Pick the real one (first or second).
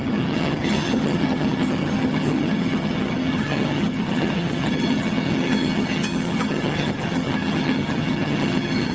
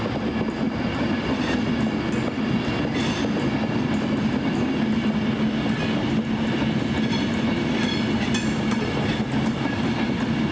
second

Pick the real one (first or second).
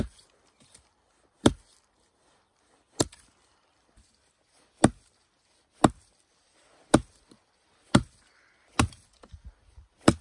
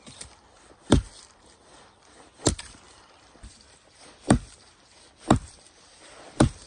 first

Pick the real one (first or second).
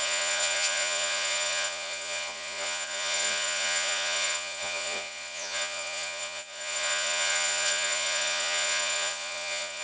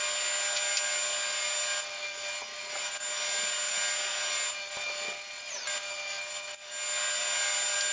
second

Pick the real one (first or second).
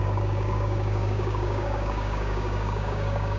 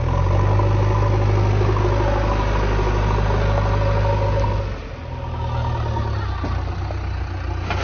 second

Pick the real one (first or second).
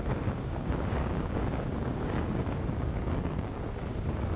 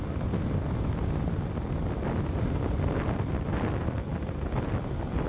second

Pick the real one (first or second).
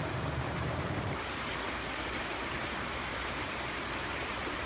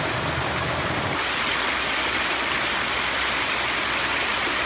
second